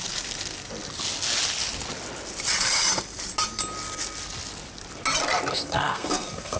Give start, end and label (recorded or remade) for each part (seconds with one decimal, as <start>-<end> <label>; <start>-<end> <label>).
0.0-5.5 recorded; 5.5-6.6 remade